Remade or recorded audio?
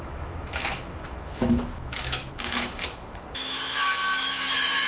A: remade